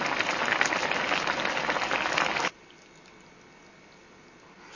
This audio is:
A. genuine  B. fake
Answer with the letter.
A